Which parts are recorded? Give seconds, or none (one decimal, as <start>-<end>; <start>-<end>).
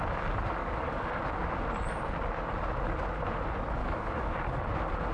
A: 0.0-0.6; 1.2-3.8; 4.6-5.1